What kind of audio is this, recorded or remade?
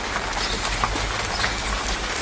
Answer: recorded